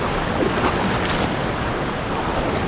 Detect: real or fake real